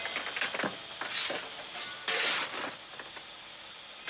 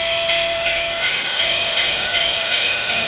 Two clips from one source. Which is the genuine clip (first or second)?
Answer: first